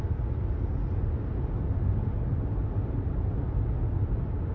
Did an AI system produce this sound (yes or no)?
no